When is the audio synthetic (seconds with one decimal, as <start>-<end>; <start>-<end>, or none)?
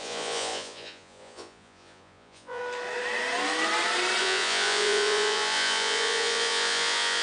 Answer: 0.0-2.6; 4.2-7.2